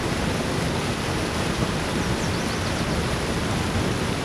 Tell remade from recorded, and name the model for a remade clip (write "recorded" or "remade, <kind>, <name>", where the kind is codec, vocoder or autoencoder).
recorded